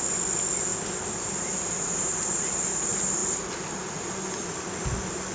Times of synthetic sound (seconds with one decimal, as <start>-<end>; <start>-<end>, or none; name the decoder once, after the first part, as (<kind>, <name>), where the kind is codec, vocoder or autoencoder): none